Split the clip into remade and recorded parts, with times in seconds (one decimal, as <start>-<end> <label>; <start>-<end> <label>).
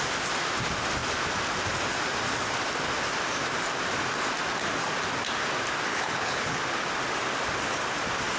0.0-5.9 recorded; 5.9-6.6 remade; 6.6-8.4 recorded